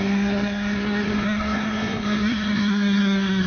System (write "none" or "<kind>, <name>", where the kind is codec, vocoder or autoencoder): codec, SNAC